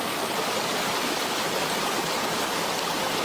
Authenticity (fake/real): real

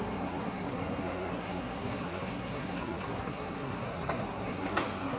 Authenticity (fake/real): fake